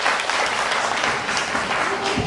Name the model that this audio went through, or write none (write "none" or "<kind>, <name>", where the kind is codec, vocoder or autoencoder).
none